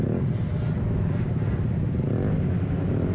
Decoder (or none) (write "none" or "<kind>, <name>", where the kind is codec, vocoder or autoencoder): none